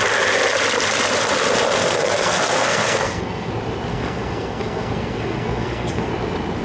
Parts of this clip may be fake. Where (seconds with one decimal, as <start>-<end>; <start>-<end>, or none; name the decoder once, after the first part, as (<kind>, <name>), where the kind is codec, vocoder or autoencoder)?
1.8-3.5 (codec, SNAC); 3.9-6.1